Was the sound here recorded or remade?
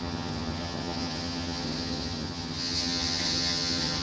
remade